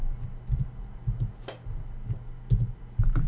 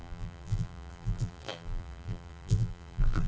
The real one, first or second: first